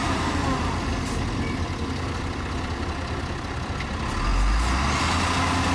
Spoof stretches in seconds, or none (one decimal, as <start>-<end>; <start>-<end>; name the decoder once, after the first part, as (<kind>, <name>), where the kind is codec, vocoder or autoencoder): none